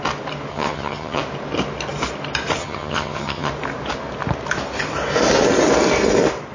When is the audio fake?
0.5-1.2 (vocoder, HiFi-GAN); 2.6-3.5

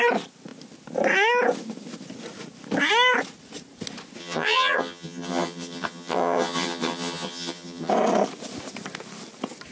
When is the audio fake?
4.2-7.9 (vocoder, HiFi-GAN)

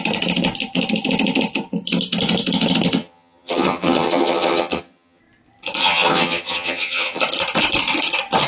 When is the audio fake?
3.0-5.2 (vocoder, HiFi-GAN); 5.8-7.2

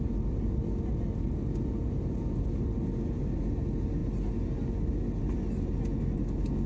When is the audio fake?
none

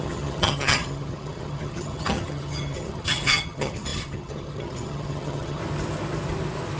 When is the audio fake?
0.0-5.6 (vocoder, HiFi-GAN)